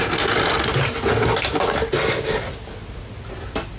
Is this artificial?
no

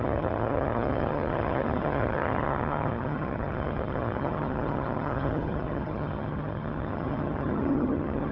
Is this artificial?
yes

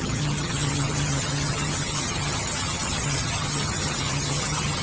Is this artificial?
yes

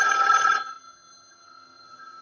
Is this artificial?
yes